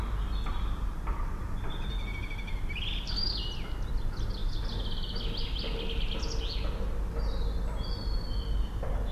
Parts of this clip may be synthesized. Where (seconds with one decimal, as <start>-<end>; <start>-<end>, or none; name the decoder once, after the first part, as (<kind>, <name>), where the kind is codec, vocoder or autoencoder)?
0.5-1.4 (vocoder, BigVGAN v2)